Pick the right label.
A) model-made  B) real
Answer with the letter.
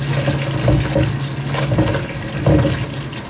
B